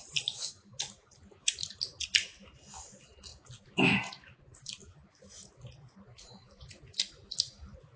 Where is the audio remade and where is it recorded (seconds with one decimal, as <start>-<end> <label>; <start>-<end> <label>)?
0.0-8.0 recorded